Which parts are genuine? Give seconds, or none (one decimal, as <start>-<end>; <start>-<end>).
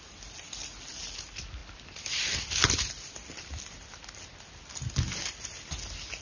0.0-6.2